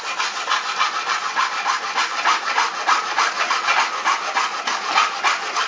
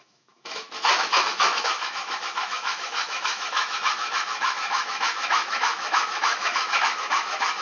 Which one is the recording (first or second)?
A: first